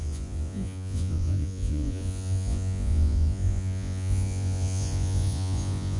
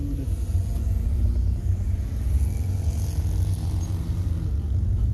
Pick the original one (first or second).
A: second